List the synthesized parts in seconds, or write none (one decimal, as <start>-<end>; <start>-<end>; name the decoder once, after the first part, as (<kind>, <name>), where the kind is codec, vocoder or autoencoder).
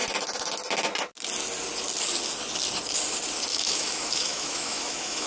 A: 3.5-5.3 (autoencoder, DAC-VAE)